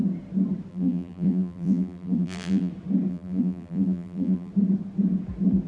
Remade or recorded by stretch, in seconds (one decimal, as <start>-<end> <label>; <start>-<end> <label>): 0.0-0.7 recorded; 0.7-2.7 remade; 2.7-3.1 recorded; 3.1-4.5 remade; 4.5-5.7 recorded